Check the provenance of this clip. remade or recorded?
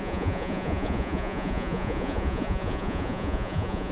remade